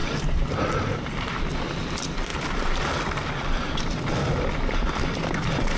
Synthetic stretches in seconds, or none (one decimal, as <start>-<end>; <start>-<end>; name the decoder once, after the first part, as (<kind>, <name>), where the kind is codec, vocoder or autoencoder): 0.0-1.4 (vocoder, BigVGAN v2); 2.3-4.1